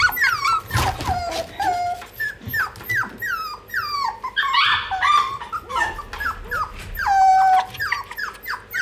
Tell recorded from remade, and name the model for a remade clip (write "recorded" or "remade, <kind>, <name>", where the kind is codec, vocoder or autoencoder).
recorded